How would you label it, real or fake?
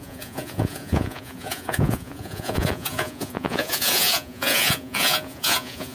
fake